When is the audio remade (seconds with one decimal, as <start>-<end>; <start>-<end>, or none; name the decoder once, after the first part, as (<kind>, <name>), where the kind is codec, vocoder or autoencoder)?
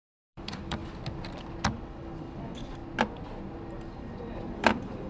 0.0-0.8 (vocoder, BigVGAN v2); 1.7-2.8; 3.7-5.1